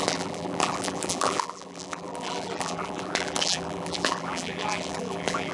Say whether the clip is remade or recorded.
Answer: remade